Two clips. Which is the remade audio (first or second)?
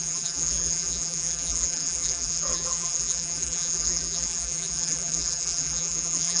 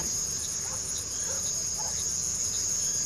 first